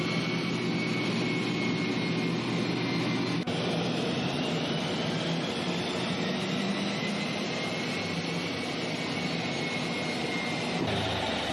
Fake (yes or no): no